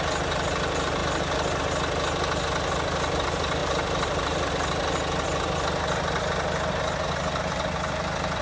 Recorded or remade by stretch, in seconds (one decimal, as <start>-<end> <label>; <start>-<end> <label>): 0.0-3.6 recorded; 3.6-4.5 remade; 4.5-8.4 recorded